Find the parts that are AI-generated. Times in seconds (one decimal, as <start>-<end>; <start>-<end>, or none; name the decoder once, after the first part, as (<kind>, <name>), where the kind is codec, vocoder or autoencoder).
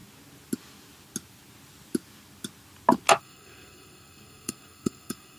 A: 3.2-5.4 (codec, SNAC)